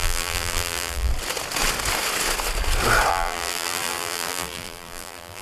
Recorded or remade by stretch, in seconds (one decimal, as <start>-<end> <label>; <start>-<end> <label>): 0.0-1.1 remade; 1.1-3.1 recorded; 3.1-5.4 remade